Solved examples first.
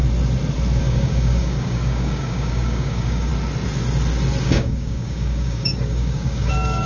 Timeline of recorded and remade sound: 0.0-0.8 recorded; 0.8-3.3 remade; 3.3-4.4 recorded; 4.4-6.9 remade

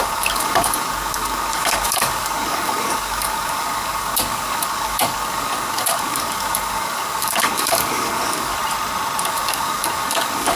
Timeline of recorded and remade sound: 0.0-8.6 remade; 8.6-9.2 recorded; 9.2-10.6 remade

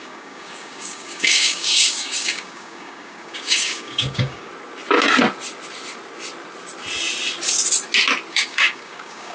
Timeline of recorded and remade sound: 0.0-4.5 remade; 4.5-8.3 recorded; 8.3-9.3 remade

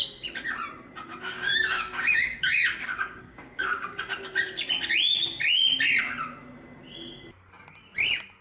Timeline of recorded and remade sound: 0.0-1.1 recorded; 1.1-4.0 remade; 4.0-8.4 recorded

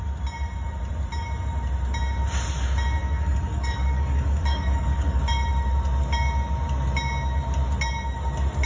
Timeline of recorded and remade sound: 0.0-3.0 recorded; 3.0-5.2 remade; 5.2-8.7 recorded